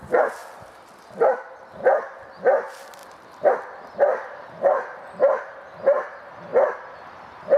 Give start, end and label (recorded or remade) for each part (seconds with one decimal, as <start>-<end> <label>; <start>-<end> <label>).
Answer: 0.0-7.6 recorded